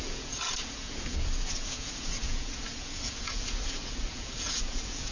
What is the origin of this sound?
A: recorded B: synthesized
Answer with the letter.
B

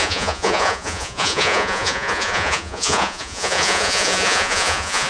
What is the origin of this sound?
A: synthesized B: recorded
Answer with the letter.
A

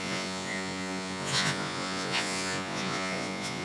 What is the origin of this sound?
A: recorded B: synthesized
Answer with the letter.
B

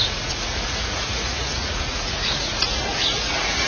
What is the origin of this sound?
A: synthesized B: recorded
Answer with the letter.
A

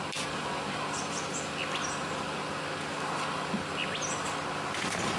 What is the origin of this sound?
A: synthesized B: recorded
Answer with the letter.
B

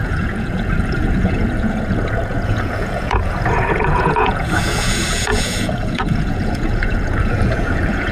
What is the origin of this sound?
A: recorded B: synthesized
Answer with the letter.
B